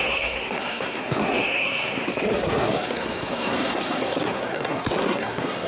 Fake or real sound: fake